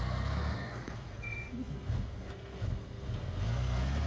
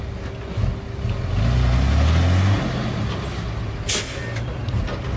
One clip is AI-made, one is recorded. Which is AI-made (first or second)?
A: first